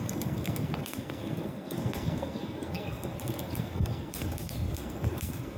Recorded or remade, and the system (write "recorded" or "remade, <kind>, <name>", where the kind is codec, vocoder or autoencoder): remade, codec, SNAC